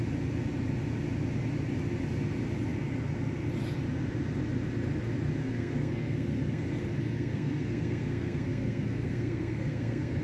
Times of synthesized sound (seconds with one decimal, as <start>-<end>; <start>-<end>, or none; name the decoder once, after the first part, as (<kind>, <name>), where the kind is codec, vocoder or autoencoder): 5.4-6.6 (codec, SNAC); 7.0-10.2